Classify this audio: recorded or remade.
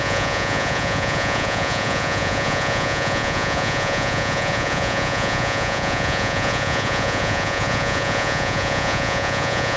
remade